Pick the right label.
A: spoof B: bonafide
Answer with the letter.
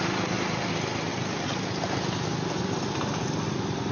B